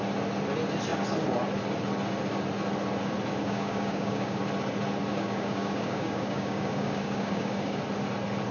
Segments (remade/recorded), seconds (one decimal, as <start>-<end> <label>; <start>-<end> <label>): 0.0-3.4 recorded; 3.4-4.4 remade; 4.4-5.1 recorded; 5.1-7.8 remade; 7.8-8.5 recorded